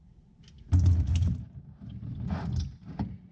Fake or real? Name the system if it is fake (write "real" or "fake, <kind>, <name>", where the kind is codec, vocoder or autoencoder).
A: real